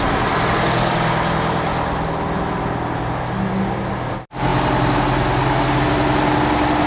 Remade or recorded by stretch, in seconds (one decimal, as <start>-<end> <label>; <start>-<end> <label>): 0.0-6.9 recorded

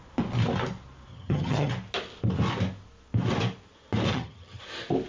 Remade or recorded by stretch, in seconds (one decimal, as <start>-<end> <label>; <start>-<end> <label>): 0.0-1.1 recorded; 1.1-1.7 remade; 1.7-4.1 recorded; 4.1-4.6 remade; 4.6-5.1 recorded

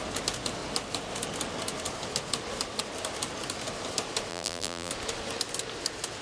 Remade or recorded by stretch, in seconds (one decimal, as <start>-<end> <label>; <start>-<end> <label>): 0.0-4.3 recorded; 4.3-4.9 remade; 4.9-6.2 recorded

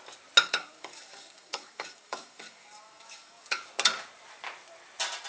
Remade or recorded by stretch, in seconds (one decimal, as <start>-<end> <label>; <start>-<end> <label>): 0.0-0.4 recorded; 0.4-3.6 remade; 3.6-5.3 recorded

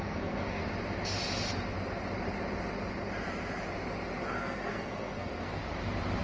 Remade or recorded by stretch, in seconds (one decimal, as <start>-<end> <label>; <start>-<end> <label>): 0.0-0.6 remade; 0.6-4.3 recorded; 4.3-5.6 remade; 5.6-6.2 recorded

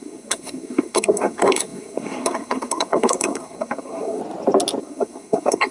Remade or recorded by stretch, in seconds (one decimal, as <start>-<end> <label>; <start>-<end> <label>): 0.0-4.2 remade; 4.2-4.8 recorded; 4.8-5.7 remade